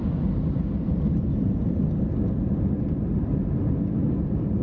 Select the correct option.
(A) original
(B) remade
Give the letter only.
A